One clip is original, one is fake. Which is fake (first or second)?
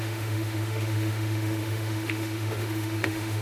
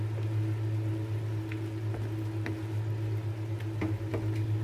first